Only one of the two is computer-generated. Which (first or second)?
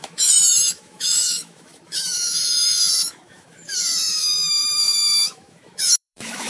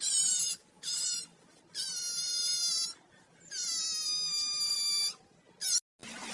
first